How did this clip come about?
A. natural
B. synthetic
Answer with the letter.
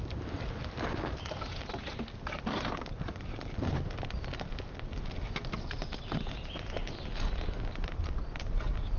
A